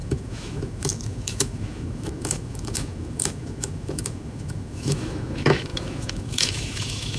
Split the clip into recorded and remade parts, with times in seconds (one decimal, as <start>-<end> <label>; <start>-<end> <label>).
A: 0.0-7.2 remade